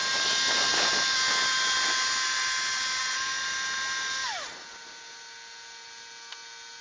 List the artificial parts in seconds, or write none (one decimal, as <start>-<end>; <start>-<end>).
none